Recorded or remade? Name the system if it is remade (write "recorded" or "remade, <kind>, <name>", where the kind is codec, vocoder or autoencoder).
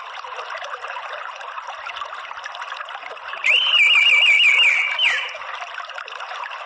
recorded